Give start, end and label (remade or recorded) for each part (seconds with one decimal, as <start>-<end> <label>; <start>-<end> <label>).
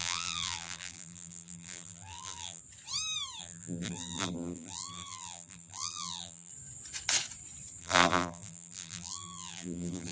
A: 0.0-2.6 remade; 2.6-3.4 recorded; 3.4-6.5 remade; 6.5-7.8 recorded; 7.8-10.1 remade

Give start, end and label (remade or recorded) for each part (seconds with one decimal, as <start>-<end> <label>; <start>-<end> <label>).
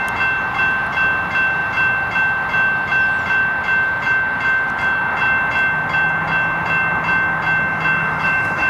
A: 0.0-8.0 recorded; 8.0-8.7 remade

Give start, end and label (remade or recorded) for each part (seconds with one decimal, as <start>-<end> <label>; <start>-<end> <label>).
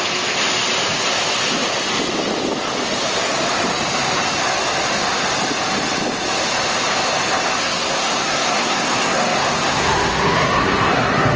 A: 0.0-7.6 recorded; 7.6-11.4 remade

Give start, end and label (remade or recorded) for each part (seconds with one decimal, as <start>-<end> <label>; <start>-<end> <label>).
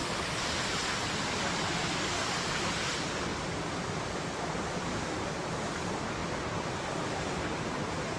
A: 0.0-1.1 remade; 1.1-2.2 recorded; 2.2-2.8 remade; 2.8-3.3 recorded; 3.3-5.3 remade; 5.3-8.2 recorded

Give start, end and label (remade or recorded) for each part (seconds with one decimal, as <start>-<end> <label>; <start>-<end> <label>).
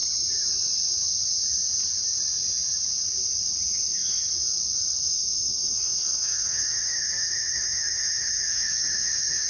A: 0.0-3.7 recorded; 3.7-4.2 remade; 4.2-5.1 recorded; 5.1-9.5 remade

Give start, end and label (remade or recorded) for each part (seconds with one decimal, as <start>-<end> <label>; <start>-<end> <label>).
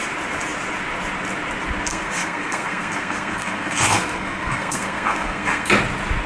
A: 0.0-1.9 recorded; 1.9-5.7 remade; 5.7-6.3 recorded